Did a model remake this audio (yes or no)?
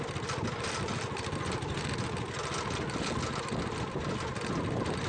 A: no